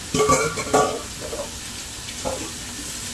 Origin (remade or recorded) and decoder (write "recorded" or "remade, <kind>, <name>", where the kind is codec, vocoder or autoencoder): recorded